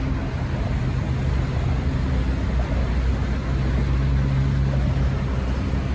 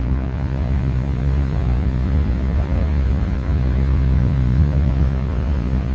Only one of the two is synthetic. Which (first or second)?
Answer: second